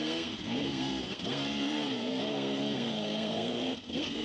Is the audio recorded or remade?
remade